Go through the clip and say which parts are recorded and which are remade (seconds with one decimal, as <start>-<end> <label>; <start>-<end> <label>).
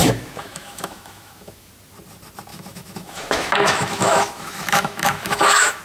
0.0-1.7 remade; 1.7-2.5 recorded; 2.5-5.8 remade